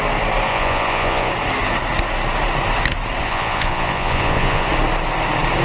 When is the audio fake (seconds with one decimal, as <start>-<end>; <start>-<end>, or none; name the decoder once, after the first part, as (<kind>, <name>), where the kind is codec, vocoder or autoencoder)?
0.5-1.3 (vocoder, Vocos); 3.2-4.7